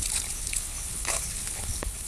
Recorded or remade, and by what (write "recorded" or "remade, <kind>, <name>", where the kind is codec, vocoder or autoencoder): remade, codec, HILCodec